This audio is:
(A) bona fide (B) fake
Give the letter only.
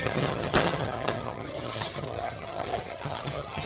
B